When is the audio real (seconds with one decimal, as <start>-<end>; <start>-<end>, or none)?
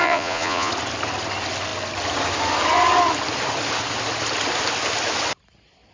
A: 0.7-5.9